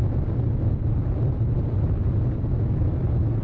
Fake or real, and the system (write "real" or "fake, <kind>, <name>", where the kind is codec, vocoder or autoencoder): real